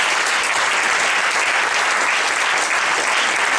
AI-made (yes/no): no